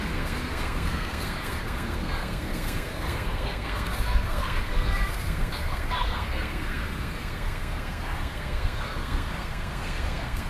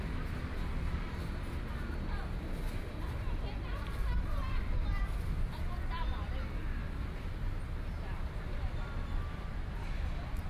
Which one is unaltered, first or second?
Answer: second